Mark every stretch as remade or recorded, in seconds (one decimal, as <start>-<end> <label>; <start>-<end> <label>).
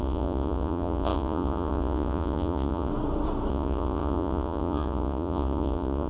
0.0-2.9 remade; 2.9-3.5 recorded; 3.5-6.1 remade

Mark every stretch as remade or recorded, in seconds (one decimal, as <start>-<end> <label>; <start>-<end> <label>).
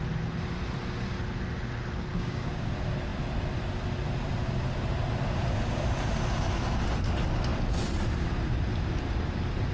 0.0-2.1 recorded; 2.1-2.7 remade; 2.7-9.7 recorded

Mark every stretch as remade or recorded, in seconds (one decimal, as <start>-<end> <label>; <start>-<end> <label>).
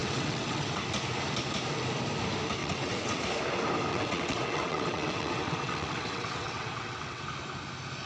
0.0-0.7 remade; 0.7-2.6 recorded; 2.6-3.2 remade; 3.2-3.9 recorded; 3.9-7.2 remade; 7.2-8.1 recorded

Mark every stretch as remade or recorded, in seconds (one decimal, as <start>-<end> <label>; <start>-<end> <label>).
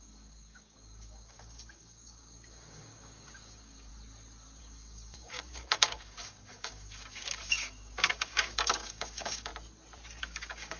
0.0-3.9 remade; 3.9-4.6 recorded; 4.6-9.5 remade; 9.5-10.2 recorded; 10.2-10.8 remade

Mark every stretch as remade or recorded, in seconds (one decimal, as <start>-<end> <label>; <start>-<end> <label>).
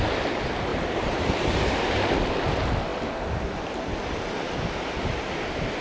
0.0-0.7 recorded; 0.7-2.1 remade; 2.1-5.8 recorded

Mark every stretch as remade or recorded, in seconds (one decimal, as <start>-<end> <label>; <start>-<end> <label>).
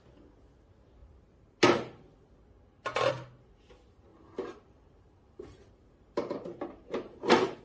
0.0-4.1 recorded; 4.1-7.6 remade